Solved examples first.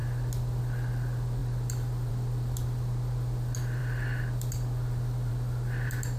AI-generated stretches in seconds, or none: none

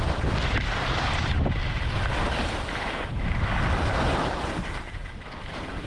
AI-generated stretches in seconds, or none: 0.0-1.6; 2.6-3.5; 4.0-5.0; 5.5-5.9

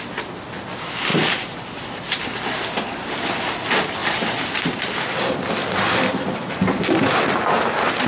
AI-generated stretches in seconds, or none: 1.1-3.2; 4.0-7.3

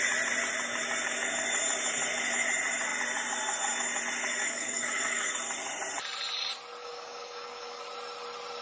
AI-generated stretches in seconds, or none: 4.4-5.3; 6.8-7.8

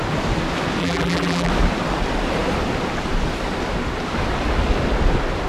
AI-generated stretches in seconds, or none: 0.8-1.5

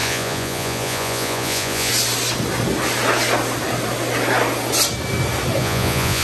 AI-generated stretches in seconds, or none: 0.0-1.9; 5.6-6.2